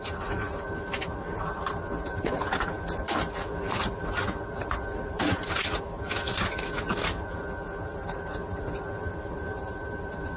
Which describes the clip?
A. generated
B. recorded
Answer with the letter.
B